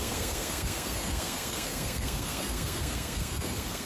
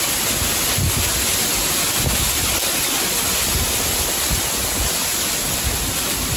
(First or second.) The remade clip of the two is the first